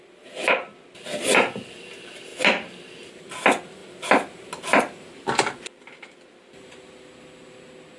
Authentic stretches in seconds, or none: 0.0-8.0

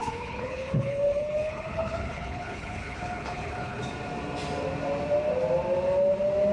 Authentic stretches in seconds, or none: 3.8-6.5